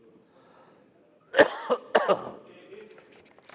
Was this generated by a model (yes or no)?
yes